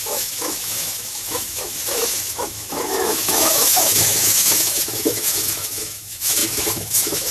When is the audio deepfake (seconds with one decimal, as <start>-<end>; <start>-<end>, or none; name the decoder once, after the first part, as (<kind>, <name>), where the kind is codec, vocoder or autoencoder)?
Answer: 0.0-7.3 (autoencoder, DAC-VAE)